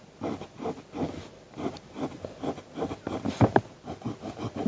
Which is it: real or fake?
real